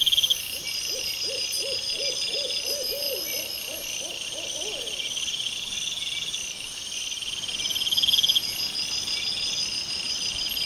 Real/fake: real